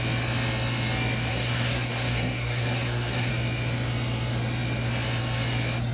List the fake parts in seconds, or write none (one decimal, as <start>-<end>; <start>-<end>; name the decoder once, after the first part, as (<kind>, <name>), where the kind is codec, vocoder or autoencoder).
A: 1.3-3.3 (codec, SNAC)